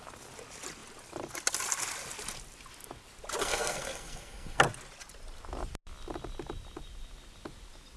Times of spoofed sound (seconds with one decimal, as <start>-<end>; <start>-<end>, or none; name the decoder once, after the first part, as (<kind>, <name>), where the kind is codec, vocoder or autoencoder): 3.4-4.6 (codec, SNAC)